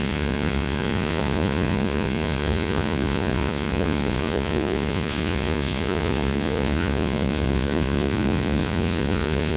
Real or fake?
fake